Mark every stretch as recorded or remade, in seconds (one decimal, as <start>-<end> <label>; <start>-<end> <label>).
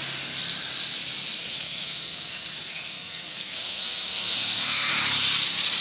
0.0-1.4 recorded; 1.4-4.9 remade; 4.9-5.8 recorded